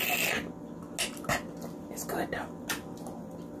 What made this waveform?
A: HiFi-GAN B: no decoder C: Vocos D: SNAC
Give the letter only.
B